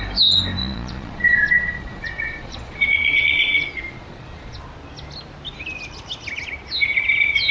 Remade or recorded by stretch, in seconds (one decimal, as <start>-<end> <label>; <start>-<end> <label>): 0.0-0.6 recorded; 0.6-4.6 remade; 4.6-7.5 recorded